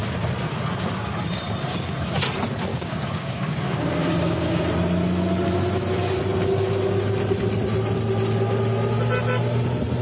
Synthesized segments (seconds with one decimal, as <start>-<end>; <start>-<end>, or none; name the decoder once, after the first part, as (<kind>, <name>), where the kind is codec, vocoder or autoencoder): 2.7-4.6 (codec, DAC)